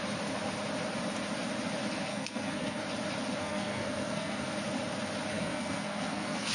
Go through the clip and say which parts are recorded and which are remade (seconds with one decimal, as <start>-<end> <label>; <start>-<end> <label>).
0.0-2.1 recorded; 2.1-2.8 remade; 2.8-3.4 recorded; 3.4-4.5 remade; 4.5-5.3 recorded; 5.3-6.5 remade